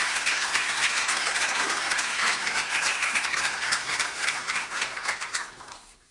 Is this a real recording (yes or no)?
no